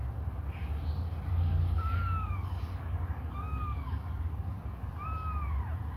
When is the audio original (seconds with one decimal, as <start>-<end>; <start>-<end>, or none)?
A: 0.0-1.3; 4.9-6.0